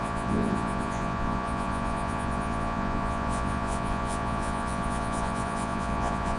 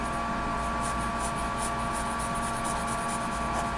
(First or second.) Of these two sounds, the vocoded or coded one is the first